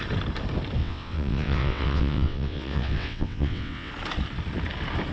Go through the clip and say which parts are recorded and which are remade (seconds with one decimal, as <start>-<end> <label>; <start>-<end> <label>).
0.0-0.8 recorded; 0.8-3.9 remade; 3.9-5.1 recorded